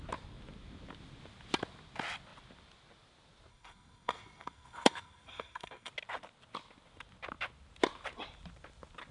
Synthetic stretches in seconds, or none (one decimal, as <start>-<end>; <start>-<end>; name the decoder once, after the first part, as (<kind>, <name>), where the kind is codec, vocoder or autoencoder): 3.5-5.9 (codec, SNAC)